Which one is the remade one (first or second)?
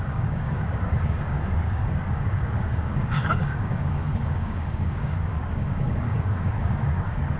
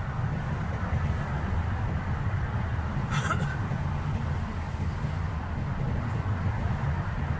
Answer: first